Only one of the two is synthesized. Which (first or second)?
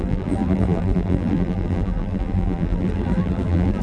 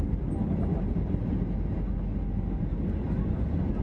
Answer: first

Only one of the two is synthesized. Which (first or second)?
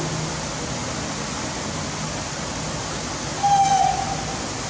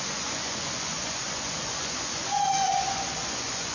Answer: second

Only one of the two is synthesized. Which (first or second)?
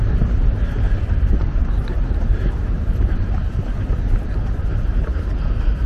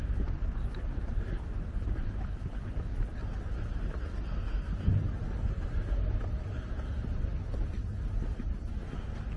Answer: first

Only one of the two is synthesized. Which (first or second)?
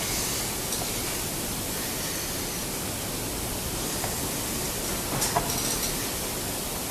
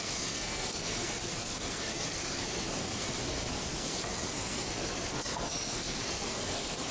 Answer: second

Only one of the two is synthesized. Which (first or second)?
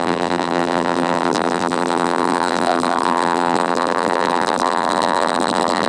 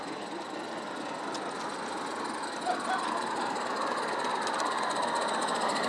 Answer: first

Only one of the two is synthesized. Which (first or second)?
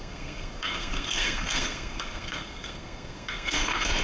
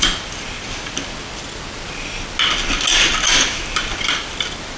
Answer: first